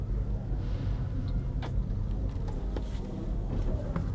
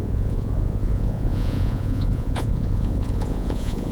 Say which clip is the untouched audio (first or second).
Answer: first